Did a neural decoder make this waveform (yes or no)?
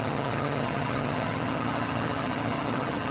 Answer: yes